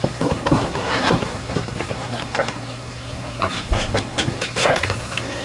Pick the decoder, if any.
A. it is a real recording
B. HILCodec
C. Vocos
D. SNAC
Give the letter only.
D